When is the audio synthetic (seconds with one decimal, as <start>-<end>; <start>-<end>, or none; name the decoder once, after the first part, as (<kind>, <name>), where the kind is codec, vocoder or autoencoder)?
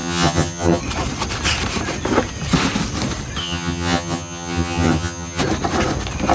0.0-0.8 (vocoder, HiFi-GAN); 3.4-5.4